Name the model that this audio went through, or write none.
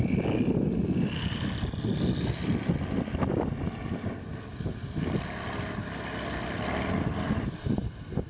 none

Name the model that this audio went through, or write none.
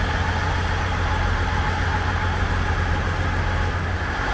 none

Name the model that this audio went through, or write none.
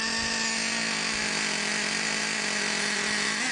none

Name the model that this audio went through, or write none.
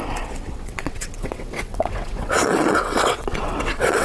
vocoder, WaveNeXt